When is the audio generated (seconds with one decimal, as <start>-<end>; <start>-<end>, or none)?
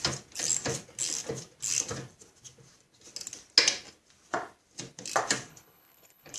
5.5-6.4